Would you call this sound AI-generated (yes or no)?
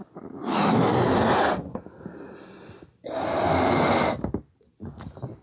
no